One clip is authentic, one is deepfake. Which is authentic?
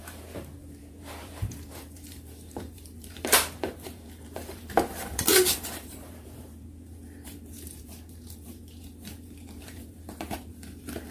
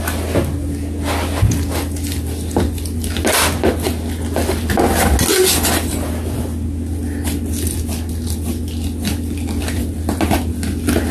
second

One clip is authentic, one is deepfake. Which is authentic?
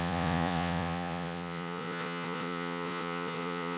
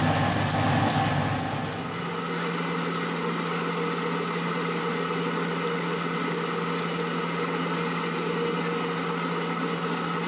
second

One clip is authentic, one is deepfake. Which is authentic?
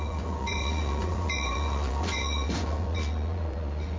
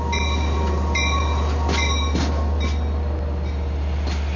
second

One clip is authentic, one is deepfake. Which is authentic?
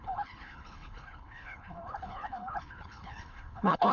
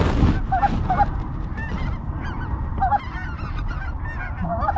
second